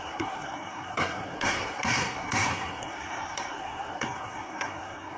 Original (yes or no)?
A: no